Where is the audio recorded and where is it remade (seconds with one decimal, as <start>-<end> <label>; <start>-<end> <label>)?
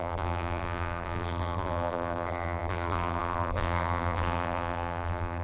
0.0-5.4 remade